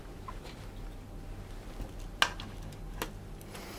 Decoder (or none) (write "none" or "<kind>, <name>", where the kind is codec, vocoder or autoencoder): none